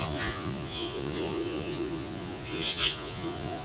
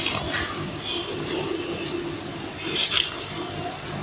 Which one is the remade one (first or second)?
first